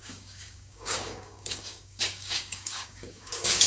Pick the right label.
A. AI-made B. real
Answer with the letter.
A